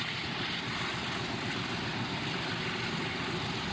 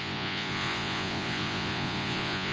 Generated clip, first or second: second